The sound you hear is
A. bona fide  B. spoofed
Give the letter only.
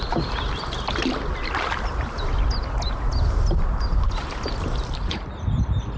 A